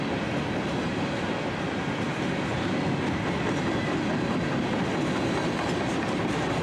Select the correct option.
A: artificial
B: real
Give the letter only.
B